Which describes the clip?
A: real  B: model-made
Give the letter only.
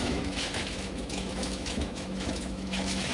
B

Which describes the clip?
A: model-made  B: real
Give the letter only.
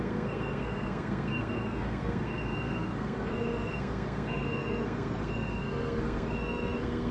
A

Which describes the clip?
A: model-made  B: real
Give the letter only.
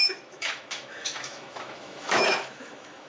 A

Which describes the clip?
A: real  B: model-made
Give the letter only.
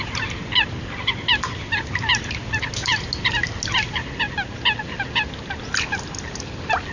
A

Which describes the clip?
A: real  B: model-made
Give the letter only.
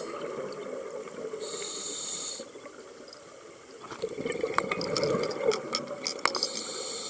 A